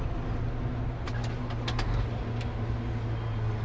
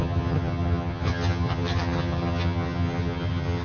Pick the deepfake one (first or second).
second